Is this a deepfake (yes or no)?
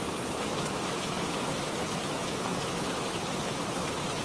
yes